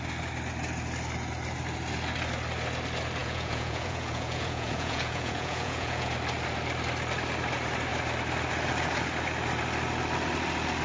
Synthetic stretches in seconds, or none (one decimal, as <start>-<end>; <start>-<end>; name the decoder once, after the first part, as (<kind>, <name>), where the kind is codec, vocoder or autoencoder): 3.2-6.1 (vocoder, Vocos)